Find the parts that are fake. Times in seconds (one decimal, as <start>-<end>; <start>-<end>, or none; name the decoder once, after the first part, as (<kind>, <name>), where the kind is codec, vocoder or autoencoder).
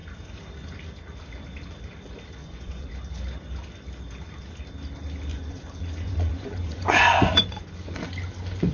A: 2.4-2.9 (vocoder, Vocos); 5.3-7.7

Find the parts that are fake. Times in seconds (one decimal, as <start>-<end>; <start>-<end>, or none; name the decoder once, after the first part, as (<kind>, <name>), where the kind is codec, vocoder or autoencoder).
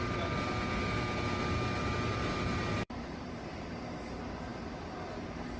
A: 2.1-3.8 (vocoder, BigVGAN v2)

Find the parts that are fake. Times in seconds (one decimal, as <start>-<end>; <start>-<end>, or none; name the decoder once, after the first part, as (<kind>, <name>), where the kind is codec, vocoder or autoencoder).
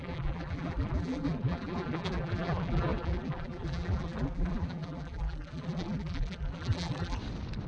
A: 0.0-7.2 (vocoder, BigVGAN v2)